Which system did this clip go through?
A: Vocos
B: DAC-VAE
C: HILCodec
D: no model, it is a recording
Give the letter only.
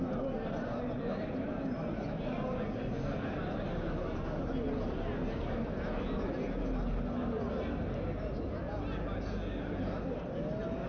D